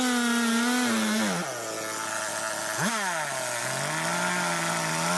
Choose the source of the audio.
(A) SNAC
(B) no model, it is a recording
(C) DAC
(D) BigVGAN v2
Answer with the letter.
B